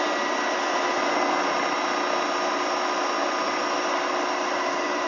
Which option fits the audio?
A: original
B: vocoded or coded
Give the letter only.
A